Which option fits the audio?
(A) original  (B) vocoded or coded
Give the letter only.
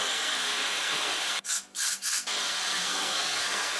B